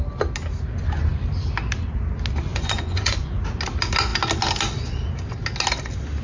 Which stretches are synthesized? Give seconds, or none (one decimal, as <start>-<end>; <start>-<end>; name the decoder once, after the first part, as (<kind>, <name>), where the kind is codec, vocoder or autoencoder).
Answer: 2.5-3.4 (vocoder, Vocos)